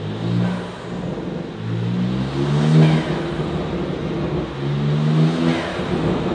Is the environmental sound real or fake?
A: real